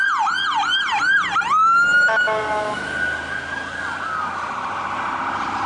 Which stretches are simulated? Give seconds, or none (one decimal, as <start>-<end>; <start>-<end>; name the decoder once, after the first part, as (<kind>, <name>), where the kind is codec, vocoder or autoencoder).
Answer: none